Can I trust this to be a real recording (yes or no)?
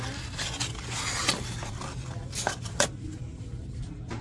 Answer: yes